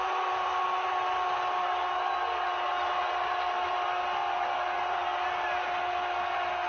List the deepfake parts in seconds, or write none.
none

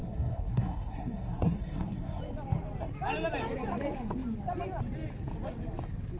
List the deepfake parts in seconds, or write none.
0.0-2.2 (codec, SNAC)

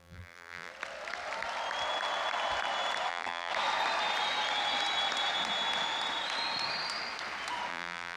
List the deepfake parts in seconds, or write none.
0.0-0.7 (vocoder, BigVGAN v2); 3.1-3.5; 7.7-8.2